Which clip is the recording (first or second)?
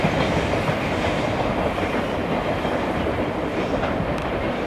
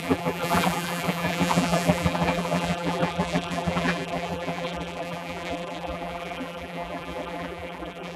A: first